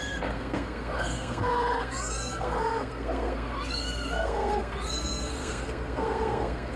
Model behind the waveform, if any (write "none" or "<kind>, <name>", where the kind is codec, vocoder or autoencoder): codec, SNAC